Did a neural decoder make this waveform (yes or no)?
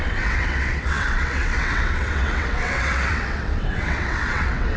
yes